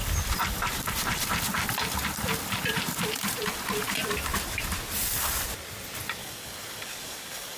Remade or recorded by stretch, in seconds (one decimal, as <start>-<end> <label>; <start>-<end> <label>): 0.0-6.2 recorded; 6.2-7.6 remade